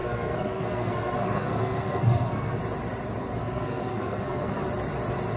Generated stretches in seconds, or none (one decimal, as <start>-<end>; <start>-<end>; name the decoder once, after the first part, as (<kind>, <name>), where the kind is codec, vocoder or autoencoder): 0.0-2.6 (codec, SNAC); 3.4-4.6